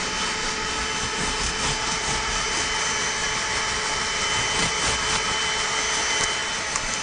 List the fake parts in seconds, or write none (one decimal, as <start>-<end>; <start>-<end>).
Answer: none